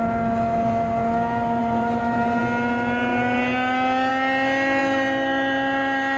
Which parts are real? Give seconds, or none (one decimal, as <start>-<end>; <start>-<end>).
0.0-1.6; 2.4-6.2